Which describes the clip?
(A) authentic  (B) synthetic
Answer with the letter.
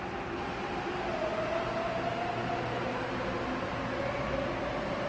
A